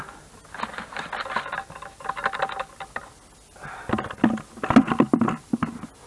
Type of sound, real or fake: real